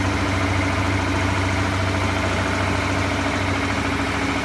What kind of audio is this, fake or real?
real